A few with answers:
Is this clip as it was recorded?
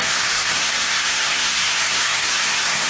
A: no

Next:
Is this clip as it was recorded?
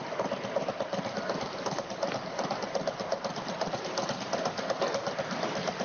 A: yes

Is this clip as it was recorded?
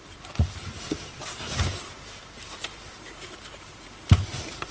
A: no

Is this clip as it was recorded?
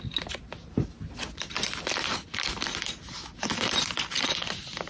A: yes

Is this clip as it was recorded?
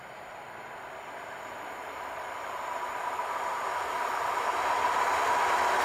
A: yes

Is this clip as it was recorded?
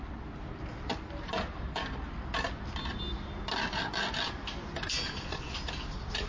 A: yes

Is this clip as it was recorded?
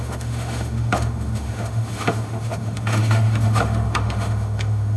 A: no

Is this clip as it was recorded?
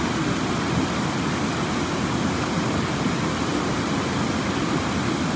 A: yes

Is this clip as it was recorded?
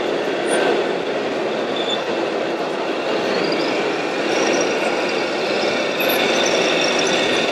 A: yes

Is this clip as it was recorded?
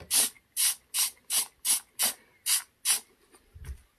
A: yes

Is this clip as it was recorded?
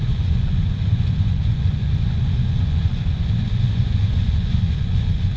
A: no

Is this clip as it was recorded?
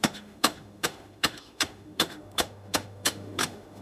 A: no